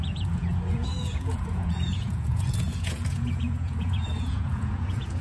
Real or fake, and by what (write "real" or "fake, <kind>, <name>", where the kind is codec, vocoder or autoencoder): fake, vocoder, Vocos